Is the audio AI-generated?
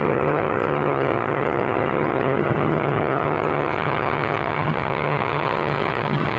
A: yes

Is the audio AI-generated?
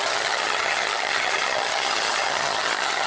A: yes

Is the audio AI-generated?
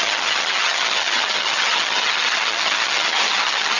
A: yes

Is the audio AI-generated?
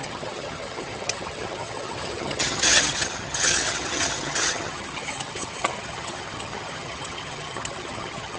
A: yes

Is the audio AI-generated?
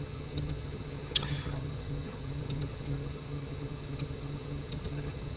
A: yes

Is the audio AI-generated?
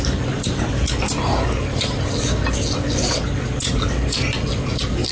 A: no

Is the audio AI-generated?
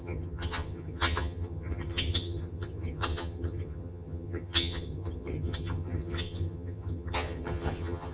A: yes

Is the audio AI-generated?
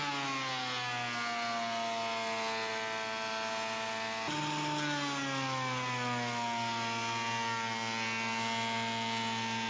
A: no